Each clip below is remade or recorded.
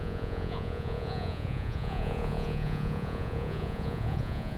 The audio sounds remade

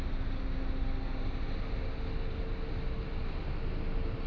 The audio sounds recorded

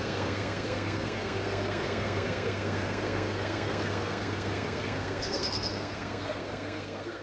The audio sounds remade